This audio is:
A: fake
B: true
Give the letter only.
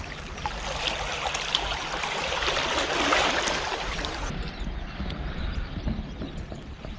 B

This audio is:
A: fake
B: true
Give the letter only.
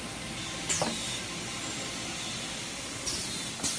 B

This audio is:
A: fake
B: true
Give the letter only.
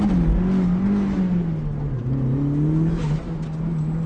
B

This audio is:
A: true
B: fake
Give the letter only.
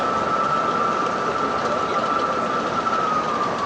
A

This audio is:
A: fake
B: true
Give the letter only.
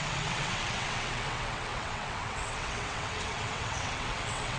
A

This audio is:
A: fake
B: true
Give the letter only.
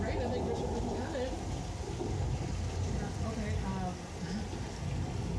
B